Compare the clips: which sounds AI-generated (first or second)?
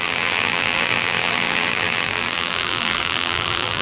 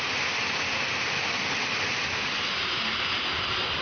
first